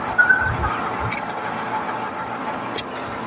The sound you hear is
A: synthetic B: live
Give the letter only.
B